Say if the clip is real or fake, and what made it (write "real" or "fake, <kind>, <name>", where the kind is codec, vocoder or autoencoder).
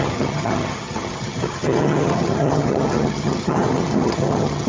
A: fake, vocoder, HiFi-GAN